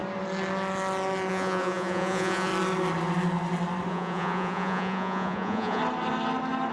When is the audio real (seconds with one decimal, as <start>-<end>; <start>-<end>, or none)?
0.0-1.3; 2.5-3.9; 5.8-6.7